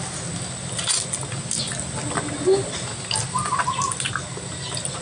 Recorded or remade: recorded